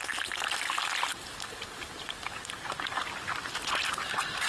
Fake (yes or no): no